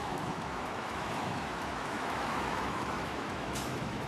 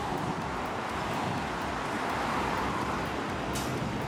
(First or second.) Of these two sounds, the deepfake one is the first